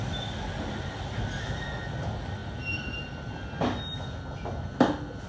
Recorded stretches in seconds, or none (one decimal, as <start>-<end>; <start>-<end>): 0.0-5.3